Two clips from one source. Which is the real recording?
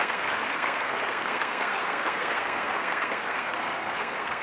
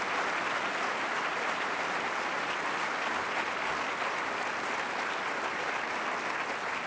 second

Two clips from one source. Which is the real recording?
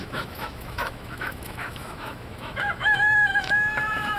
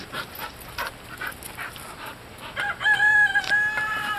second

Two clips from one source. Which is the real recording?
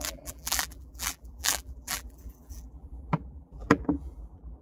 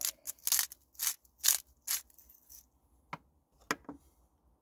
second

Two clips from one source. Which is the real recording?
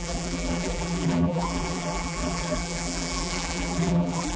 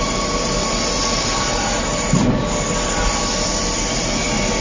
second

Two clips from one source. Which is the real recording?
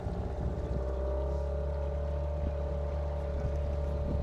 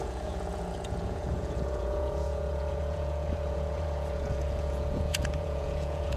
first